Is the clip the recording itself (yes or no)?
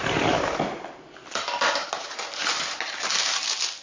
yes